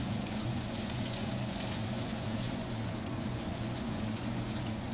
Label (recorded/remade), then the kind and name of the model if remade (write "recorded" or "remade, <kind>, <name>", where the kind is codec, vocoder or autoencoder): remade, vocoder, Vocos